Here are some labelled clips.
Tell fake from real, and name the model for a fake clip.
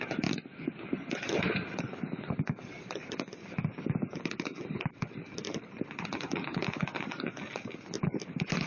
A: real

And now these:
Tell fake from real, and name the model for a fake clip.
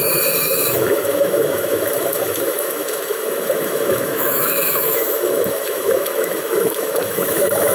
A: fake, autoencoder, DAC-VAE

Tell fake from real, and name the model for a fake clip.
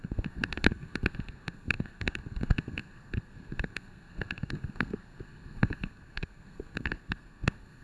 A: fake, codec, SNAC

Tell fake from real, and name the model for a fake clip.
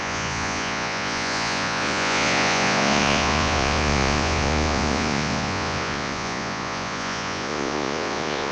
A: fake, vocoder, Vocos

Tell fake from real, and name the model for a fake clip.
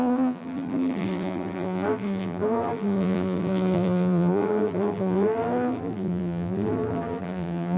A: fake, vocoder, BigVGAN v2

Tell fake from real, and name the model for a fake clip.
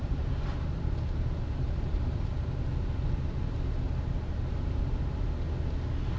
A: real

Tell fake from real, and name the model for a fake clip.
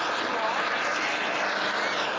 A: real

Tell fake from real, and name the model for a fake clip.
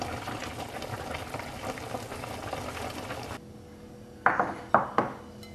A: real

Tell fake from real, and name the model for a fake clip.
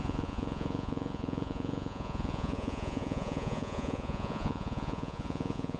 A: fake, vocoder, Vocos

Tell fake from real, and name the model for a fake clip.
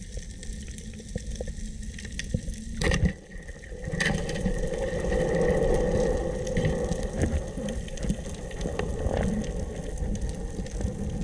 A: real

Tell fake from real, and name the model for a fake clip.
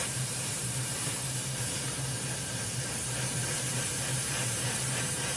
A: fake, vocoder, BigVGAN v2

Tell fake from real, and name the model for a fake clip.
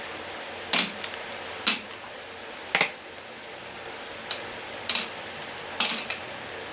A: real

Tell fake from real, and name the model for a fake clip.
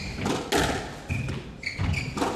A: real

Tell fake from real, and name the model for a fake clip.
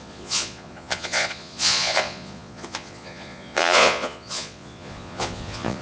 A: fake, vocoder, Vocos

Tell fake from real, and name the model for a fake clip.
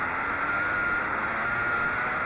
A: real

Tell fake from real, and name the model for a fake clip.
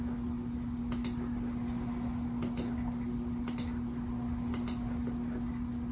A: real